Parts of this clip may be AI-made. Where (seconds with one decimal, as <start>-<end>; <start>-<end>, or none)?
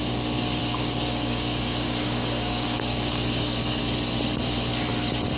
0.6-3.8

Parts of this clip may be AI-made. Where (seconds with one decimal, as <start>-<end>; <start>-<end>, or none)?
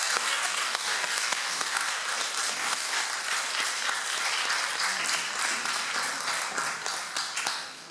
0.0-2.0; 2.5-3.1; 7.5-7.9